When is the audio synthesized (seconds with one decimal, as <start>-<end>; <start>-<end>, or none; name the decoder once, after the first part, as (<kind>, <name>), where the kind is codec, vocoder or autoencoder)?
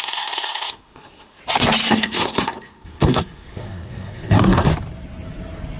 0.0-1.4 (codec, SNAC); 1.9-4.7